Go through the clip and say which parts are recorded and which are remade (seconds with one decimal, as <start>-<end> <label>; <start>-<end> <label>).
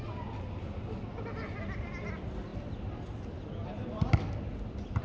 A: 0.0-5.0 recorded